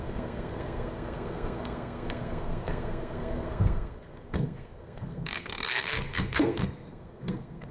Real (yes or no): no